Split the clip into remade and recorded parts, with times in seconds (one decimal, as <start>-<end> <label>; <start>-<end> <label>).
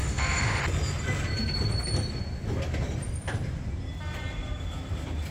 0.0-0.6 remade; 0.6-5.3 recorded